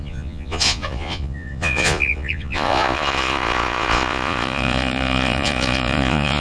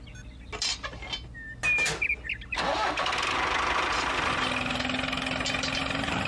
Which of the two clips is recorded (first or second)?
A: second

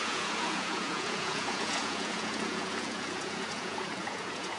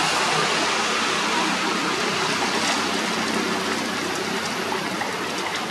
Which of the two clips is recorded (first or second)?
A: second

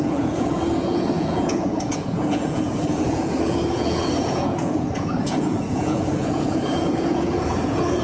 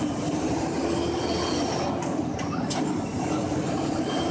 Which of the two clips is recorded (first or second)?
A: second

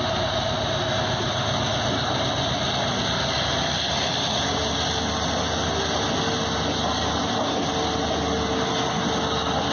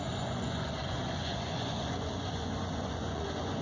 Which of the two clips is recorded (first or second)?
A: first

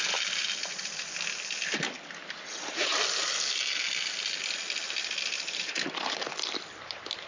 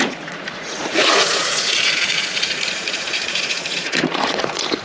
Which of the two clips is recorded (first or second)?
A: first